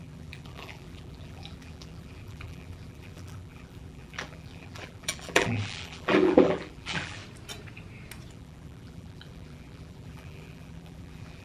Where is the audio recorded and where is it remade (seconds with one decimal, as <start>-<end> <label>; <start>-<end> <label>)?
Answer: 0.0-7.2 remade; 7.2-8.3 recorded; 8.3-11.4 remade

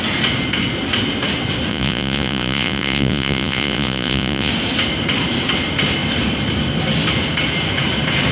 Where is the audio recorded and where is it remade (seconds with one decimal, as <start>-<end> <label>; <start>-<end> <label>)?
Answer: 0.0-1.7 recorded; 1.7-4.5 remade; 4.5-8.3 recorded

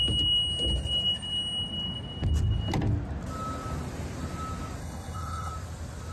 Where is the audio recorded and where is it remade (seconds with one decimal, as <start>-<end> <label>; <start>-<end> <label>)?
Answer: 0.0-4.8 recorded; 4.8-5.5 remade; 5.5-6.1 recorded